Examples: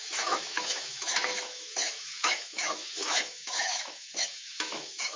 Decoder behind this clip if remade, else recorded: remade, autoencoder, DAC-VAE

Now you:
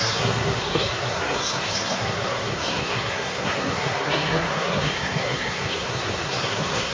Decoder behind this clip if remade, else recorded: remade, codec, SNAC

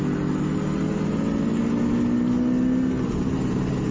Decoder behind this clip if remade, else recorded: recorded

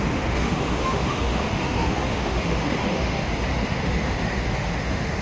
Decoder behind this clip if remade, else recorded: remade, autoencoder, DAC-VAE